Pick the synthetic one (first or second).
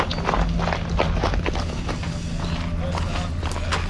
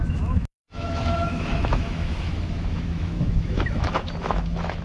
second